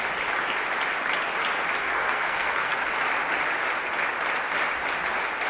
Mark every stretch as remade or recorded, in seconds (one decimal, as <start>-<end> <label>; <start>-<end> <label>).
0.0-1.8 recorded; 1.8-2.9 remade; 2.9-5.5 recorded